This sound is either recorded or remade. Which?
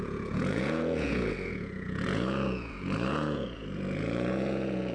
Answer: remade